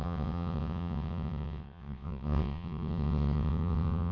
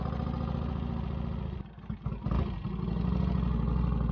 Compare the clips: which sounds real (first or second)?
second